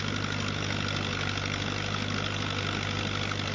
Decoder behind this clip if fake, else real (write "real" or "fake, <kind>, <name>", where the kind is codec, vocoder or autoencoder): real